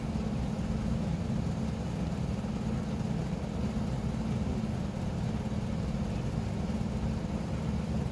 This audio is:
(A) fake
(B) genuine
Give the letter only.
B